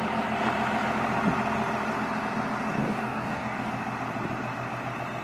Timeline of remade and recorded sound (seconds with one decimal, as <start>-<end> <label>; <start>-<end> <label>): 0.0-2.8 recorded; 2.8-3.7 remade; 3.7-5.2 recorded